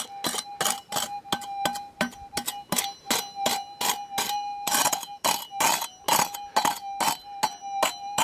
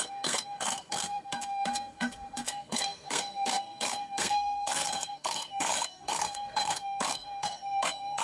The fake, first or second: second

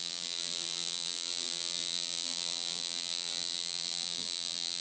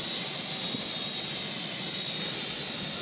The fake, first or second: first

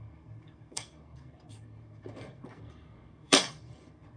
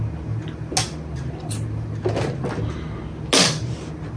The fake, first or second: first